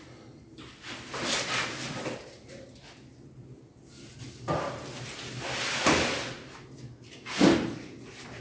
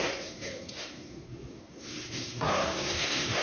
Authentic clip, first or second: first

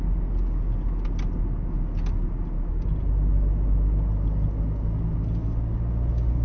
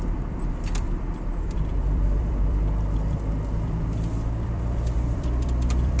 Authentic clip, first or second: first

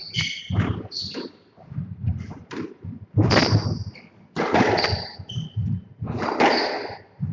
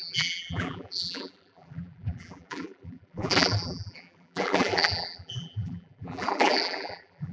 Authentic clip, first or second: first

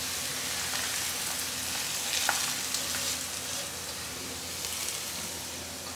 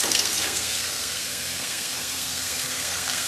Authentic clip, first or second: first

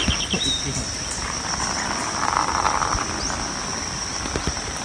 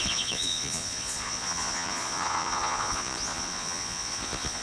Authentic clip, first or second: first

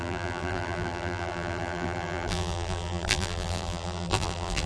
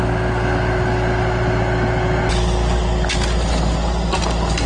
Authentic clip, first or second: second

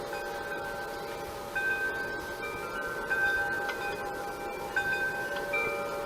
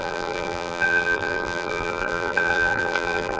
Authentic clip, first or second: first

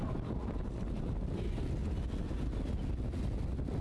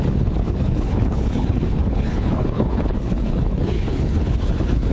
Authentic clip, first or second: first